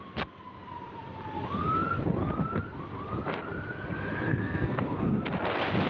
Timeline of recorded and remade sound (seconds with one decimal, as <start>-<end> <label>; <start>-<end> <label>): 0.0-4.3 recorded; 4.3-5.2 remade; 5.2-5.9 recorded